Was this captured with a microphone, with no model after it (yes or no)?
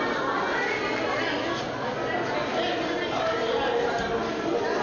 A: yes